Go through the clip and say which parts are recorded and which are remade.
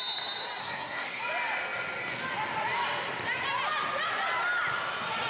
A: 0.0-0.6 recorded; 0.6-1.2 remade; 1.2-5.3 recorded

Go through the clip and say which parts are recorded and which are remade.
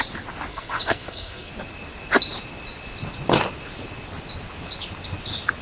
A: 0.0-0.5 recorded; 0.5-1.5 remade; 1.5-5.6 recorded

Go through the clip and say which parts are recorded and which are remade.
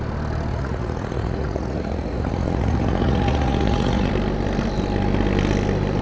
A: 0.0-0.5 recorded; 0.5-4.1 remade; 4.1-6.0 recorded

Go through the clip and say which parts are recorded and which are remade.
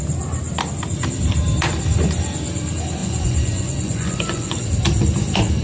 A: 0.0-3.0 recorded; 3.0-4.6 remade; 4.6-5.6 recorded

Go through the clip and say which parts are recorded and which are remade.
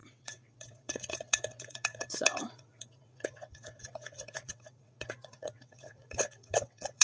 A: 0.0-7.0 remade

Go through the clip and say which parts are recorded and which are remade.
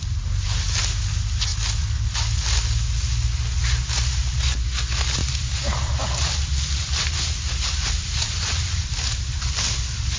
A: 0.0-4.2 recorded; 4.2-4.7 remade; 4.7-5.2 recorded; 5.2-9.7 remade; 9.7-10.2 recorded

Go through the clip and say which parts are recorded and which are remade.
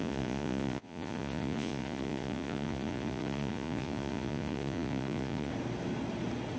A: 0.0-5.5 remade; 5.5-6.6 recorded